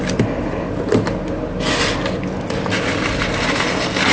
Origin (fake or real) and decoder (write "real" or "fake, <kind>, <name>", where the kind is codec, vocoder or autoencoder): real